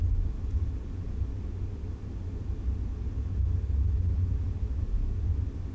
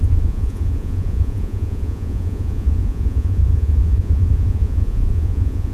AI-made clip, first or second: second